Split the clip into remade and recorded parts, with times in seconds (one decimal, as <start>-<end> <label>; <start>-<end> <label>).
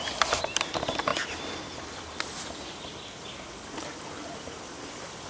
0.0-5.3 recorded